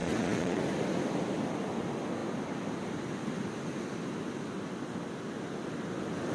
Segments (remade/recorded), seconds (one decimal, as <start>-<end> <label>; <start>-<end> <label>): 0.0-0.6 remade; 0.6-6.3 recorded